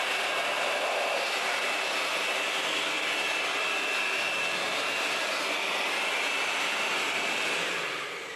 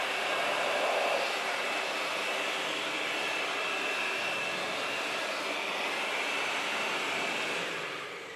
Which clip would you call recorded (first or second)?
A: first